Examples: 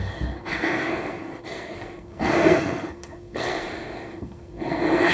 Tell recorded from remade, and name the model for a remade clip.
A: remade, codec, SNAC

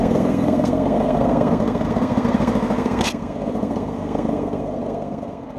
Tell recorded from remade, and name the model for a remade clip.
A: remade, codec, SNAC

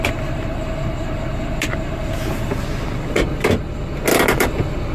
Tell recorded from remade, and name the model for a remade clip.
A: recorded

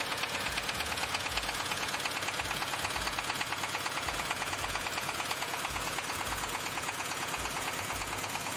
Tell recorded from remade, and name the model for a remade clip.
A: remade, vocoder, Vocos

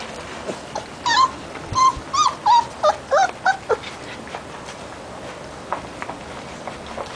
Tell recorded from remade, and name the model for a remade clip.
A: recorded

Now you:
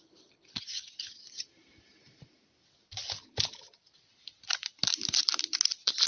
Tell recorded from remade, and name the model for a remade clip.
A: recorded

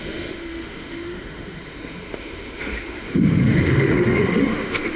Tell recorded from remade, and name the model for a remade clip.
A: remade, autoencoder, DAC-VAE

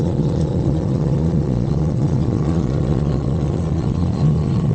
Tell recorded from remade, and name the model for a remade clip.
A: remade, vocoder, Vocos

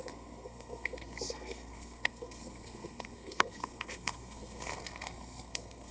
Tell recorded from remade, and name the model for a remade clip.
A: remade, codec, SNAC